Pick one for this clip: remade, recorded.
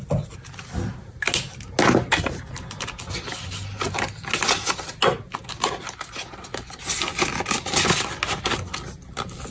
recorded